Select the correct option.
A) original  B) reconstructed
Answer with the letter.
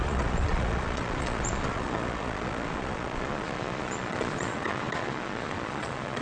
B